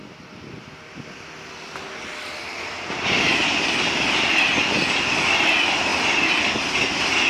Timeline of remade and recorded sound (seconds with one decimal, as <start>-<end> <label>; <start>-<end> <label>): 0.0-7.3 recorded